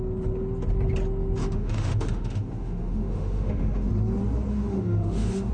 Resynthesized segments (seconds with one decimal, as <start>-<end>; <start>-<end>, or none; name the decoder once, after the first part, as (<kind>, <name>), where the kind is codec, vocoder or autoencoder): 1.4-3.9 (autoencoder, DAC-VAE); 4.5-5.5